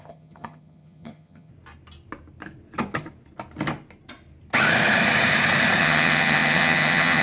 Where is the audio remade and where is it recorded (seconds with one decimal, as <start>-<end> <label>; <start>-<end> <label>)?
0.0-1.5 remade; 1.5-5.8 recorded; 5.8-7.2 remade